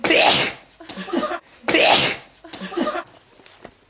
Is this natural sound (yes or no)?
yes